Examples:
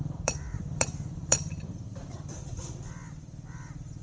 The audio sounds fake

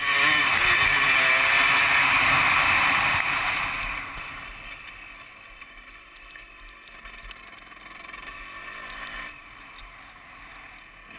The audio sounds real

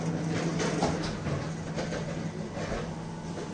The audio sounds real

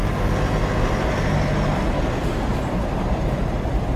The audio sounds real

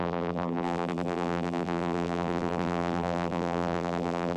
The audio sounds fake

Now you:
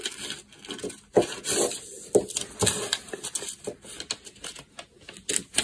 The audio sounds real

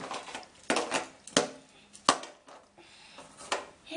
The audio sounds real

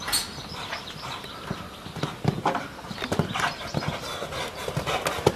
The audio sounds real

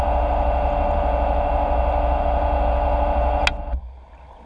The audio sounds real